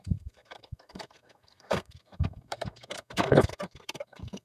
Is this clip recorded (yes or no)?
no